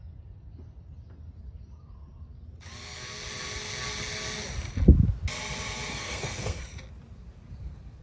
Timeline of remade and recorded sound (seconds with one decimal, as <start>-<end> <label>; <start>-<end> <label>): 0.0-5.9 recorded; 5.9-6.6 remade; 6.6-8.0 recorded